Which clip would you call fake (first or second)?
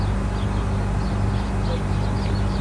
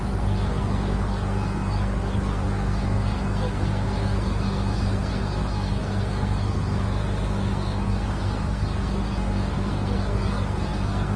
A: second